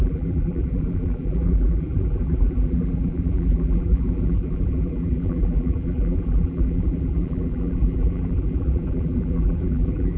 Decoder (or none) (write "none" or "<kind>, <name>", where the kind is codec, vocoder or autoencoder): vocoder, BigVGAN v2